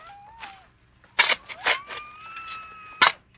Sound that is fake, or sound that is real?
real